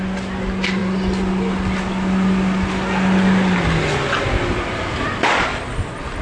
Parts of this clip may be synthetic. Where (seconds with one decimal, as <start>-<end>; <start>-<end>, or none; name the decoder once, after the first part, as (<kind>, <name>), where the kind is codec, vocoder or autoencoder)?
none